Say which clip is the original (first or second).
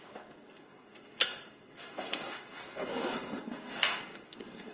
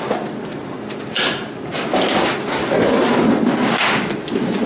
second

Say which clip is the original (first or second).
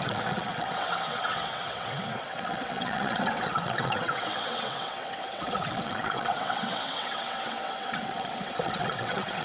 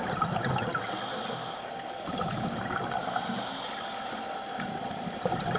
second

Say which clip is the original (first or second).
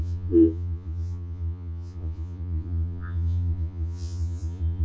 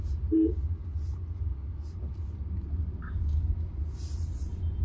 second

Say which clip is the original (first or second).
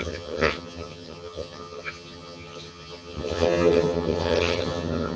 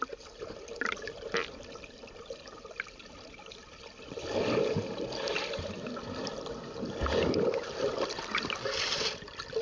second